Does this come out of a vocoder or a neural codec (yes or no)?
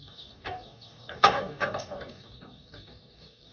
yes